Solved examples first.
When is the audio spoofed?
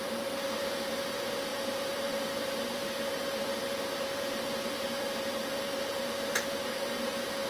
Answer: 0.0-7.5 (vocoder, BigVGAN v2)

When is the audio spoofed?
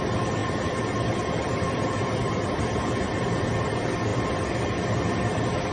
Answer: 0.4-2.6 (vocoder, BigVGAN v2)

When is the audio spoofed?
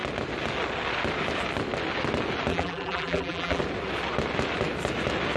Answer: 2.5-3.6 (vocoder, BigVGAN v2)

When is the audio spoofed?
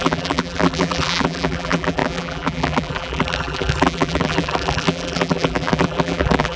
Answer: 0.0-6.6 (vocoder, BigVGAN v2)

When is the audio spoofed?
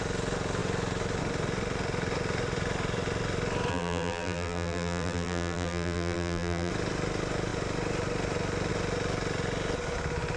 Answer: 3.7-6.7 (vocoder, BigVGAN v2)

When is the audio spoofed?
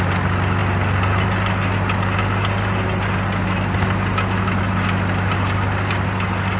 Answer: none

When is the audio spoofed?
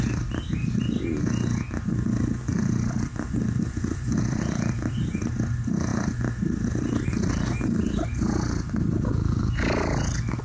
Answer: 2.5-5.1 (vocoder, BigVGAN v2)